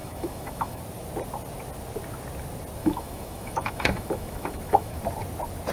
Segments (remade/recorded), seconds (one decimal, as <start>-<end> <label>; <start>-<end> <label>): 0.0-0.8 remade; 0.8-2.8 recorded; 2.8-5.0 remade; 5.0-5.7 recorded